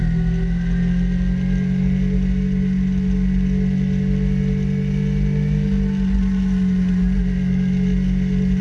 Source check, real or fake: real